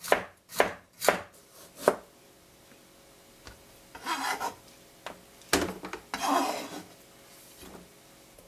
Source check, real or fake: real